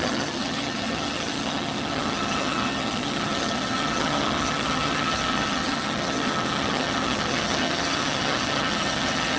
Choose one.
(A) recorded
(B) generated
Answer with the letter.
B